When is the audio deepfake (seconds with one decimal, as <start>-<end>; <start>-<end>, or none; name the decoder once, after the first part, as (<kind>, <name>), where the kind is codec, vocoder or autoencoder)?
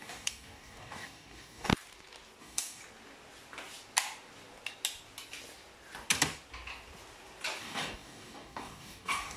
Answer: 0.0-1.7 (codec, DAC); 2.4-2.8; 7.6-9.4